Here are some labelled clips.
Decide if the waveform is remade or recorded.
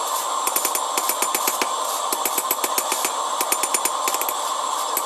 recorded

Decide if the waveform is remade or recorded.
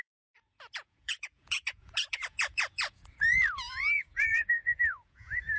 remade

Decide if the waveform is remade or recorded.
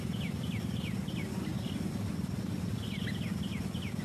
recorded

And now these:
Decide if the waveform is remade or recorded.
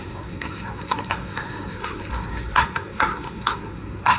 remade